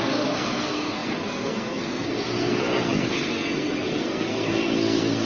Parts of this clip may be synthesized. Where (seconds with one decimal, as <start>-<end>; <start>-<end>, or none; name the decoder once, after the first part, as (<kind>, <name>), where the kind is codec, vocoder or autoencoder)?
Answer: 0.0-5.3 (codec, SNAC)